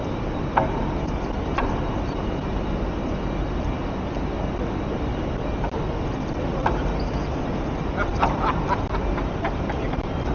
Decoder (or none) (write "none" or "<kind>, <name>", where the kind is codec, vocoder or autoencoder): none